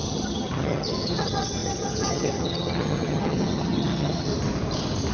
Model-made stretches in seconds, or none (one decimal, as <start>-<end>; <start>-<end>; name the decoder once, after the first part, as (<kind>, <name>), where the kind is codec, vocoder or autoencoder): 0.0-4.3 (vocoder, HiFi-GAN)